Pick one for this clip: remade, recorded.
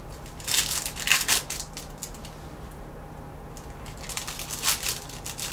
recorded